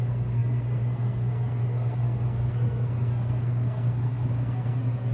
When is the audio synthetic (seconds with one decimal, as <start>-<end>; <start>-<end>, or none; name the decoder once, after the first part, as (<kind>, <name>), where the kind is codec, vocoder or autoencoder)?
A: 0.0-5.1 (codec, SNAC)